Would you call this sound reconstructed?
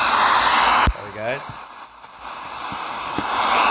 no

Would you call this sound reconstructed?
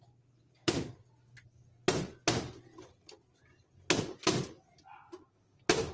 no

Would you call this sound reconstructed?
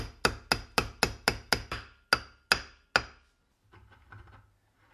no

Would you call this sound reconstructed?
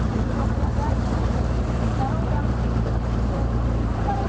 yes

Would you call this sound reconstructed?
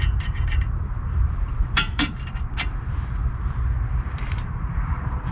yes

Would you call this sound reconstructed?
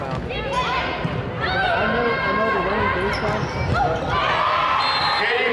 no